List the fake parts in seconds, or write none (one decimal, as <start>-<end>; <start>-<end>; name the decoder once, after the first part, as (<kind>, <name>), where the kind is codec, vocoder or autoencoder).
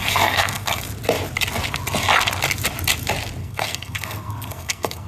0.0-0.8 (codec, SNAC); 3.4-5.1